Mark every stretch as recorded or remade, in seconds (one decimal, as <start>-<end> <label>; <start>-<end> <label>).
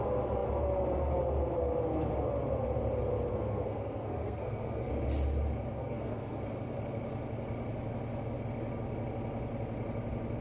0.0-3.3 recorded; 3.3-4.9 remade; 4.9-5.8 recorded; 5.8-6.4 remade; 6.4-10.4 recorded